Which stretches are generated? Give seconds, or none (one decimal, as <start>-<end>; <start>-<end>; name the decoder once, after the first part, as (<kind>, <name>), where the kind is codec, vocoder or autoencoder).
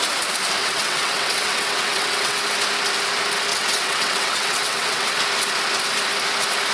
0.6-2.4 (vocoder, WaveNeXt); 3.5-5.2